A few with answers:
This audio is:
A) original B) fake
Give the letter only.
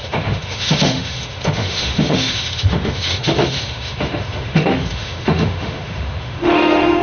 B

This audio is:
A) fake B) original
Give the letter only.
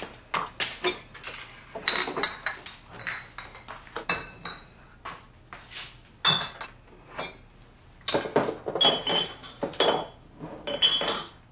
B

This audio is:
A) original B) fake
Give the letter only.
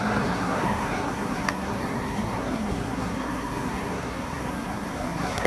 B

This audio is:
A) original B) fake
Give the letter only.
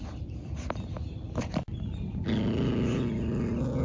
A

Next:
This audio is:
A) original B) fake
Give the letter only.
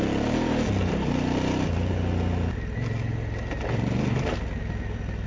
A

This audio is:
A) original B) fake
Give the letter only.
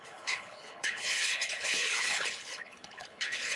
B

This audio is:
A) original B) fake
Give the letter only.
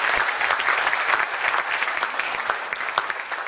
B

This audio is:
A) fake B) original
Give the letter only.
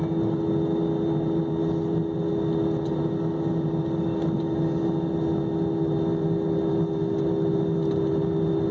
B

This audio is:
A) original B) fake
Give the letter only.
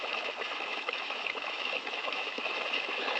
B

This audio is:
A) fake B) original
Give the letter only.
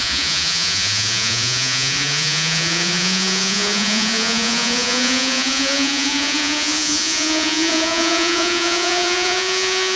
A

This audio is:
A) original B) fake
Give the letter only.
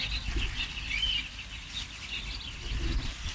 A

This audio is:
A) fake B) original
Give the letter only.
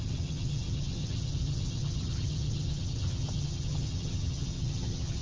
A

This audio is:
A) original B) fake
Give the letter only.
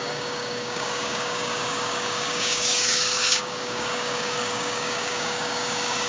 B